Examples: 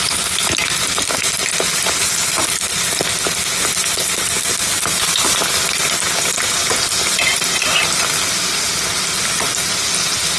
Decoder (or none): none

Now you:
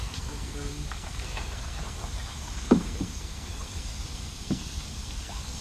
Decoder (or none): codec, SNAC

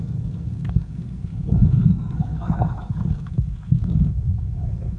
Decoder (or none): codec, SNAC